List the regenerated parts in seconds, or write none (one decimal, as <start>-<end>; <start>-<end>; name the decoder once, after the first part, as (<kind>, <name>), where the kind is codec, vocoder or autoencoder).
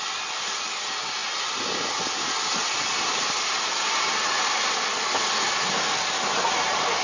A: none